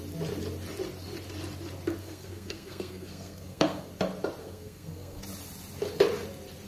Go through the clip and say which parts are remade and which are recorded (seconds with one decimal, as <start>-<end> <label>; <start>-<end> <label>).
0.0-2.0 recorded; 2.0-3.9 remade; 3.9-4.4 recorded; 4.4-5.2 remade; 5.2-6.7 recorded